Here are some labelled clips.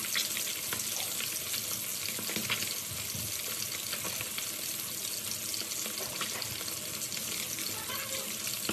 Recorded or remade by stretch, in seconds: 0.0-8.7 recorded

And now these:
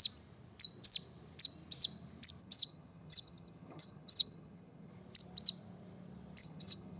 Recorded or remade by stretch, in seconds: 0.0-2.4 recorded; 2.4-4.9 remade; 4.9-6.4 recorded; 6.4-7.0 remade

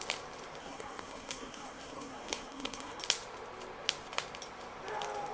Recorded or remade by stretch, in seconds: 0.0-0.6 recorded; 0.6-3.0 remade; 3.0-5.3 recorded

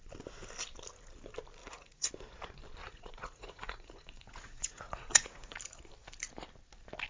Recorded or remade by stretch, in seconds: 0.0-1.6 recorded; 1.6-2.1 remade; 2.1-2.8 recorded; 2.8-5.6 remade; 5.6-7.1 recorded

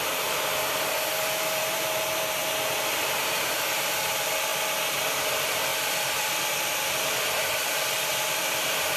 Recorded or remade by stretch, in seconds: 0.0-2.4 remade; 2.4-3.3 recorded; 3.3-4.5 remade; 4.5-5.0 recorded; 5.0-5.7 remade; 5.7-9.0 recorded

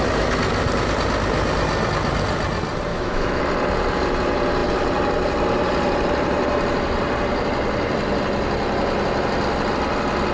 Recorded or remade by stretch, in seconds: 0.0-2.9 recorded; 2.9-3.4 remade; 3.4-10.3 recorded

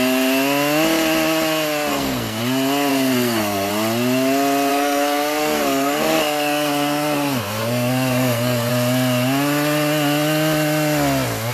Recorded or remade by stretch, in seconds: 0.0-1.9 recorded; 1.9-2.4 remade; 2.4-2.9 recorded; 2.9-3.7 remade; 3.7-4.7 recorded; 4.7-8.7 remade; 8.7-11.5 recorded